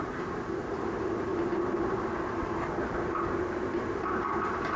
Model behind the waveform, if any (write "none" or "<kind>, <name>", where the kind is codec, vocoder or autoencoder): none